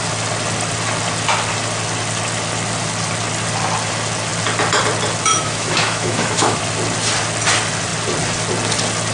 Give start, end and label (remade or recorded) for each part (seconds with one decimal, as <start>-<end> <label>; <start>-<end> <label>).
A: 0.0-5.3 recorded; 5.3-6.6 remade; 6.6-9.1 recorded